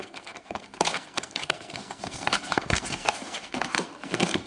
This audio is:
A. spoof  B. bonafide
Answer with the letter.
A